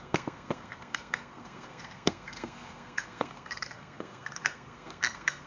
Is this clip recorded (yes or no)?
no